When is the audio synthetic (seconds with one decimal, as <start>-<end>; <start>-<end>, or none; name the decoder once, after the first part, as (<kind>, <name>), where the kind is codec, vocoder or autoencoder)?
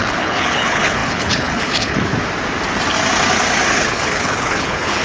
0.0-2.1 (codec, HILCodec); 3.7-5.0